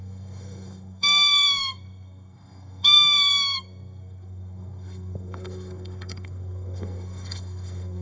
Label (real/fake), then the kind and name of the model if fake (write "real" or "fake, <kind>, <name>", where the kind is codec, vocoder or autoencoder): fake, codec, SNAC